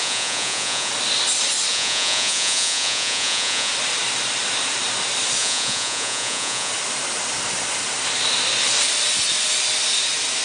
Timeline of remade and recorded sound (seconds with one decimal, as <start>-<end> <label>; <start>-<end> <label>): 0.0-0.9 remade; 0.9-1.7 recorded; 1.7-3.7 remade; 3.7-5.4 recorded; 5.4-6.7 remade; 6.7-10.4 recorded